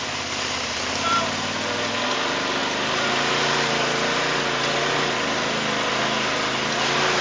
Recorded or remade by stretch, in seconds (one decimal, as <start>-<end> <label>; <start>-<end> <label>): 0.0-7.2 recorded